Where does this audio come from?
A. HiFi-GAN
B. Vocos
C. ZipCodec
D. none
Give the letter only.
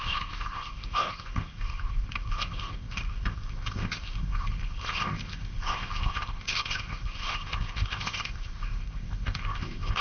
C